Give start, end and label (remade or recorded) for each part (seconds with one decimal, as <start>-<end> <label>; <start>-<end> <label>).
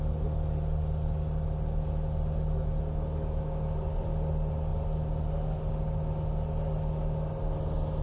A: 0.0-8.0 recorded